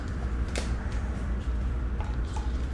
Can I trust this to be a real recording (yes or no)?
no